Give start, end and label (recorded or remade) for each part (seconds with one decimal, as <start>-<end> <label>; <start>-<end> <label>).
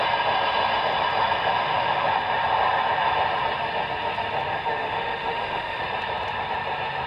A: 0.0-1.4 recorded; 1.4-2.1 remade; 2.1-4.5 recorded; 4.5-5.8 remade; 5.8-7.1 recorded